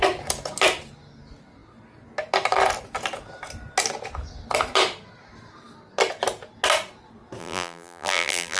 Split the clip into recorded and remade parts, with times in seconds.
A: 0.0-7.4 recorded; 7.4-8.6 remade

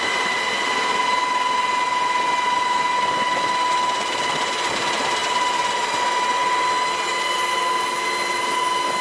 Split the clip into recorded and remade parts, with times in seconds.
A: 0.0-9.0 recorded

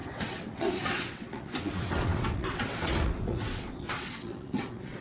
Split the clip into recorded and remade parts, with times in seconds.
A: 0.0-5.0 remade

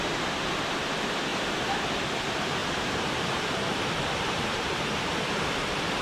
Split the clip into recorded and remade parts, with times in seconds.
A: 0.0-1.3 recorded; 1.3-1.8 remade; 1.8-2.6 recorded; 2.6-6.0 remade

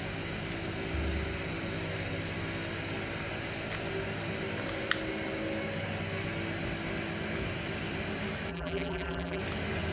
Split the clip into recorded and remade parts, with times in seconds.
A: 0.0-8.5 recorded; 8.5-9.4 remade; 9.4-9.9 recorded

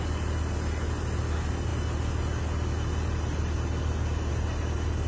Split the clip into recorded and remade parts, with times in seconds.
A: 0.0-5.1 recorded